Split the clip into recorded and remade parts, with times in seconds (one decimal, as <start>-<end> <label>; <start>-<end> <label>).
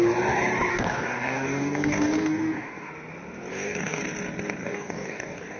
0.0-0.7 recorded; 0.7-2.9 remade; 2.9-3.5 recorded; 3.5-4.0 remade; 4.0-4.6 recorded; 4.6-5.6 remade